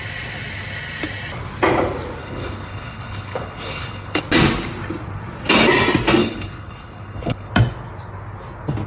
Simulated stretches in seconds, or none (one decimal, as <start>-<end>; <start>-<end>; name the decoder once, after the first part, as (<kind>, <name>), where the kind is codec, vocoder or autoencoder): 2.2-4.2 (codec, HILCodec); 6.2-7.5